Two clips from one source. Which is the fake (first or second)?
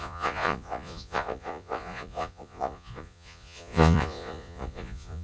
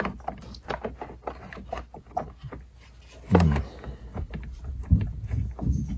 first